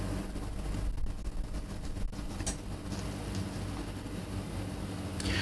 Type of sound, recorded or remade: recorded